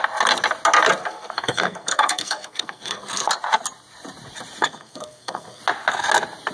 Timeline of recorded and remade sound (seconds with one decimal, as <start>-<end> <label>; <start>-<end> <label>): 0.0-1.0 recorded; 1.0-3.3 remade; 3.3-4.6 recorded; 4.6-5.6 remade; 5.6-6.5 recorded